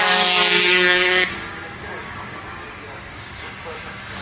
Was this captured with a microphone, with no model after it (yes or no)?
no